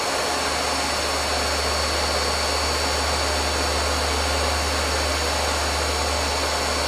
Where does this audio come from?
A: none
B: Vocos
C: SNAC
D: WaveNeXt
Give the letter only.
A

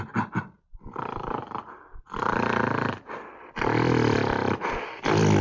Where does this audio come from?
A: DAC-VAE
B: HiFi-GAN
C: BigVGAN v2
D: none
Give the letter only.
C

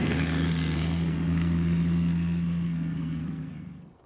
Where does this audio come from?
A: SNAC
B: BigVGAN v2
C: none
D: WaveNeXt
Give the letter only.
A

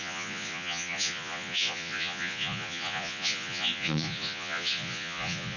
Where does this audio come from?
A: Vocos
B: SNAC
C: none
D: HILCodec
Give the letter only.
A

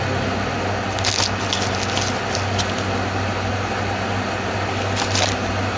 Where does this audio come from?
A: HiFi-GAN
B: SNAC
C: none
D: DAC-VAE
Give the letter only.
C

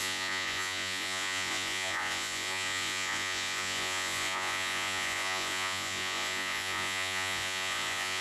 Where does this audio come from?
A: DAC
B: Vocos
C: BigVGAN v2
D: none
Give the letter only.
B